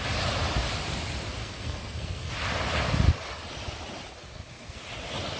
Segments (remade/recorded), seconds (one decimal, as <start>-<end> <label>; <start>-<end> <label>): 0.0-1.4 recorded; 1.4-2.3 remade; 2.3-4.2 recorded; 4.2-4.8 remade; 4.8-5.4 recorded